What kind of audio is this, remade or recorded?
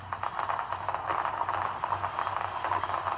recorded